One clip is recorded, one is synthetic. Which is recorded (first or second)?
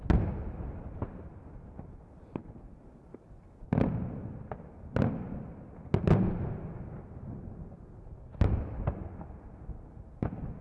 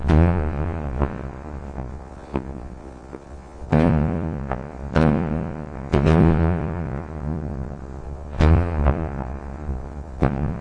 first